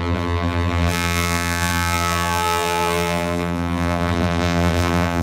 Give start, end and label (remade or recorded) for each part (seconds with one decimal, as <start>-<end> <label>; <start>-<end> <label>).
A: 0.0-5.2 remade